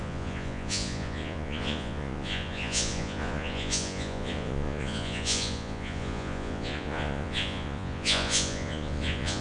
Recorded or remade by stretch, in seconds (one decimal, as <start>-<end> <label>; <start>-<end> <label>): 0.0-9.4 remade